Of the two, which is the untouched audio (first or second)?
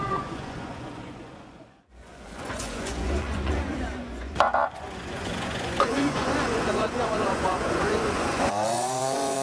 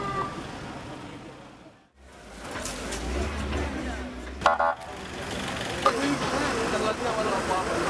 second